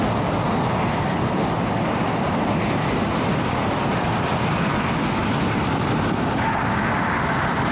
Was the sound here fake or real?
real